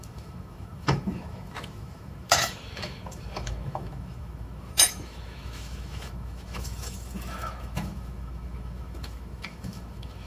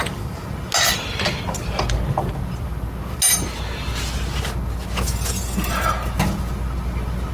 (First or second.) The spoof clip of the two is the first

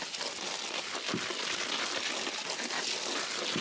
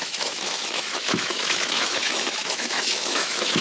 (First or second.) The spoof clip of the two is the second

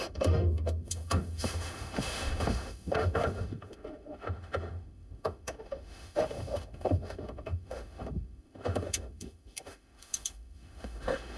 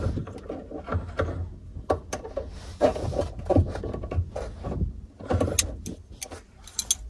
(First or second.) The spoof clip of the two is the first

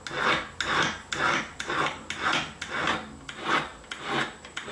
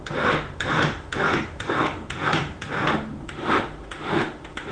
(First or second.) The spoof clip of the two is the second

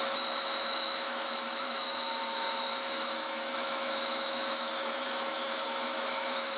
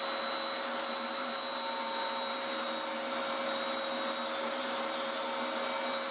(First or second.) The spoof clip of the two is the first